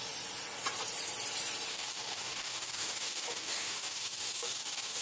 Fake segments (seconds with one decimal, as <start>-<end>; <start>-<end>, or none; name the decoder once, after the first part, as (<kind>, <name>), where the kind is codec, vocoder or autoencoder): 1.7-5.0 (codec, DAC)